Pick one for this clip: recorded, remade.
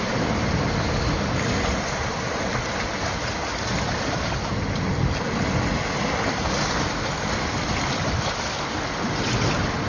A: recorded